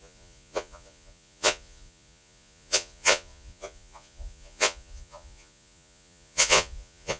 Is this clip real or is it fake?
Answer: fake